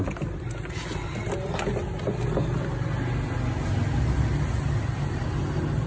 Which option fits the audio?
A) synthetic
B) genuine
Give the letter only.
B